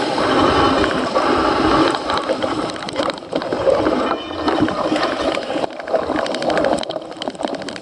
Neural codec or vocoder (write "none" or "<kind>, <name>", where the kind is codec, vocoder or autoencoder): none